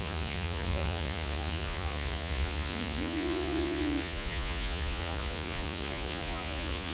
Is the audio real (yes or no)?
no